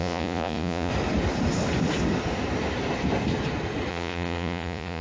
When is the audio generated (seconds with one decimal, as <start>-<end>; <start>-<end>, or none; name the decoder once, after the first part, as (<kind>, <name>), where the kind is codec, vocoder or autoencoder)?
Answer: 0.0-0.9 (vocoder, Vocos); 3.9-5.0